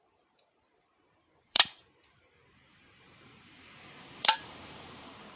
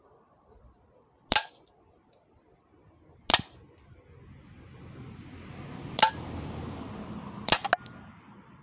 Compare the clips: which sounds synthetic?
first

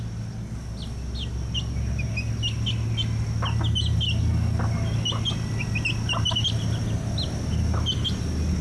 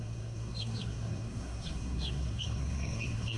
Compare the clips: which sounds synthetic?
second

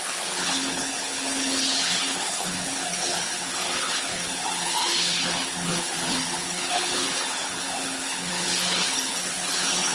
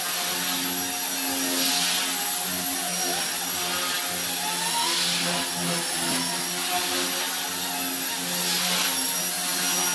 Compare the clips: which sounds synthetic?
first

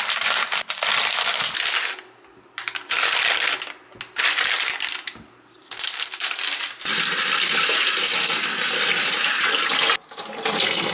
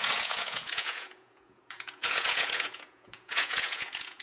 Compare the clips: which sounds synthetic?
second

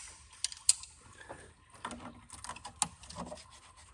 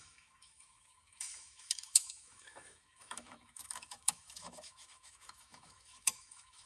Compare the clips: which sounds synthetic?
second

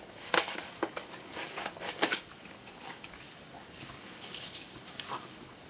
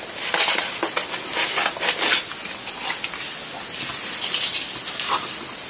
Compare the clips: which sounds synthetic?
first